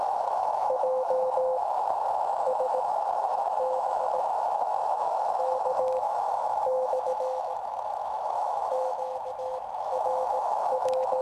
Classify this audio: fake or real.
fake